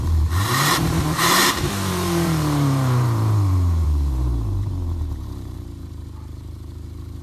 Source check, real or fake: fake